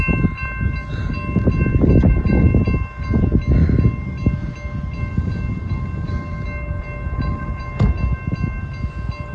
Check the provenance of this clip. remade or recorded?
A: recorded